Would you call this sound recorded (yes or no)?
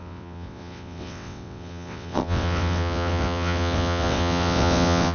no